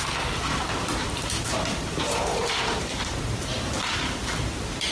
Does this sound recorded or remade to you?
remade